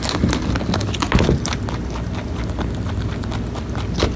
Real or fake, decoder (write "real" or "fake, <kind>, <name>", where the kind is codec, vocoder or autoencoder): real